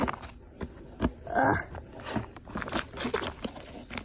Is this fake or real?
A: real